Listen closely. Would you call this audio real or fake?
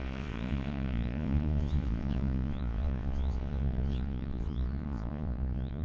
fake